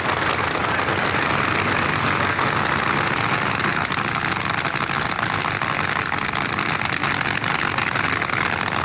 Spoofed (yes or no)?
no